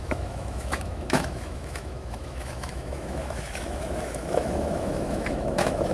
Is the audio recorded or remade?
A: remade